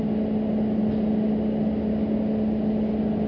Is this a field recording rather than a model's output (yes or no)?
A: yes